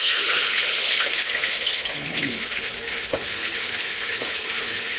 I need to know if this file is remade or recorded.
remade